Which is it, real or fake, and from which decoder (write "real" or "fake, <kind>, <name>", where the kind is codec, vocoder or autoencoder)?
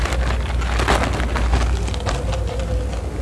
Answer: real